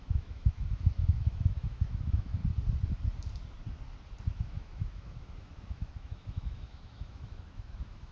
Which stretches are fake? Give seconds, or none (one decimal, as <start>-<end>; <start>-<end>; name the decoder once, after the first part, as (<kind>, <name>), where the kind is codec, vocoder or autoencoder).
0.0-2.4 (autoencoder, DAC-VAE); 4.3-8.1